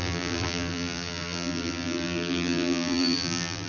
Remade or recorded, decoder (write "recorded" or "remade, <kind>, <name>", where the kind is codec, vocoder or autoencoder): remade, vocoder, BigVGAN v2